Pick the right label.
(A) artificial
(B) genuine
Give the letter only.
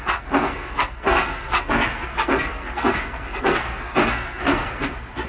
A